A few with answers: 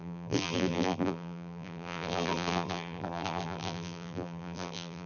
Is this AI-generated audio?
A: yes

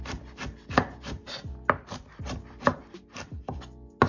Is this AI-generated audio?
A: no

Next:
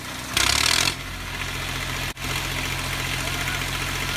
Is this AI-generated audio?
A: no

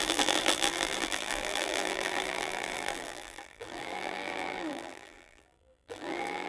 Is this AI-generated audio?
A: yes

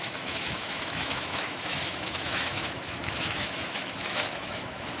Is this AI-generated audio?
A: yes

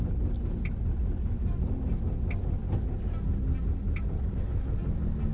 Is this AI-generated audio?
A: no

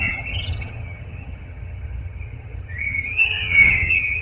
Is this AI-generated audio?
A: yes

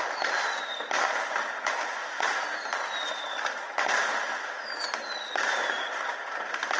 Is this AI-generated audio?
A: no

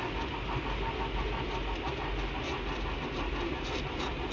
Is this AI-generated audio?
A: no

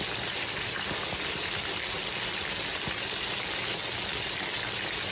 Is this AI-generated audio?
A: no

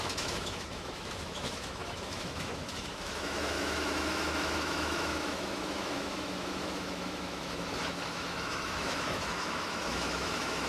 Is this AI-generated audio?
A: yes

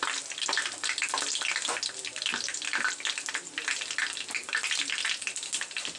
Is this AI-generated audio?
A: no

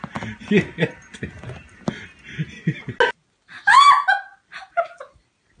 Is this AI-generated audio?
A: no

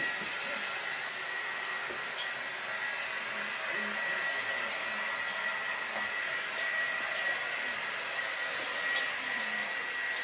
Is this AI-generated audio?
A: no